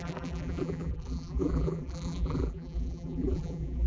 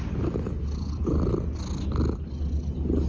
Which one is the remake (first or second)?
first